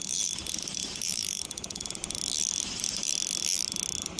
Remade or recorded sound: remade